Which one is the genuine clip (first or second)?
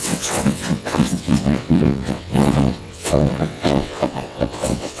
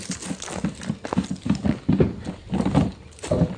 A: second